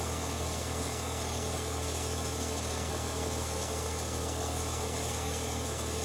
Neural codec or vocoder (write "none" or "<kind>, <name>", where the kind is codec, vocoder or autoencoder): codec, SNAC